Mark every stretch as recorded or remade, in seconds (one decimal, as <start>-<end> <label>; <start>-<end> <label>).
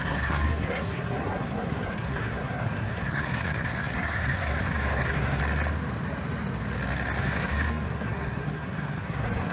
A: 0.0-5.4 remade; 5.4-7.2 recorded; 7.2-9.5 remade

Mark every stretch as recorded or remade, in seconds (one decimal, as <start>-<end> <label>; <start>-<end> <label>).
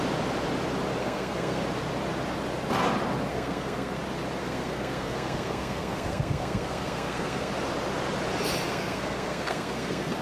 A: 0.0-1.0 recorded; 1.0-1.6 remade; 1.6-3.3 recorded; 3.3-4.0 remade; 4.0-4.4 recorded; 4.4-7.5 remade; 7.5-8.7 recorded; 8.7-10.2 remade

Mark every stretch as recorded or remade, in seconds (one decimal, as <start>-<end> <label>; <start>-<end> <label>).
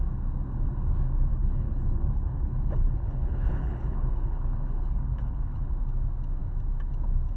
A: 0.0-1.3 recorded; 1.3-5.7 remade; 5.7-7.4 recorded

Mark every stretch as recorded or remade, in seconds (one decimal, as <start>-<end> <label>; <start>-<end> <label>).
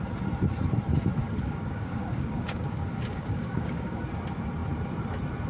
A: 0.0-1.2 recorded; 1.2-4.0 remade; 4.0-5.5 recorded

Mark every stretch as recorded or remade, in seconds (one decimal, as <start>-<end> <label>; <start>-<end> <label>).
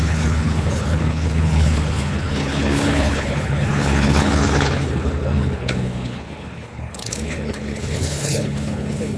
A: 0.0-9.2 remade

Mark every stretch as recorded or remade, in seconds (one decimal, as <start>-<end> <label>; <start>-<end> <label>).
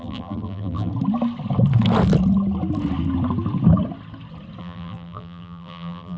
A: 0.0-0.9 remade; 0.9-4.6 recorded; 4.6-6.2 remade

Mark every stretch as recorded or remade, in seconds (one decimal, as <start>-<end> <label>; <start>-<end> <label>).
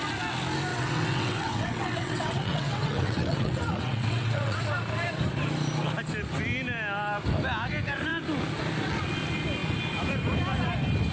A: 0.0-0.7 recorded; 0.7-4.7 remade; 4.7-11.1 recorded